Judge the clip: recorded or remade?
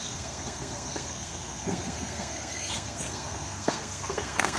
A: remade